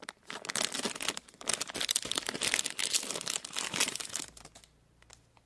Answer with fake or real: real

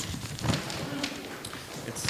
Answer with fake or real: real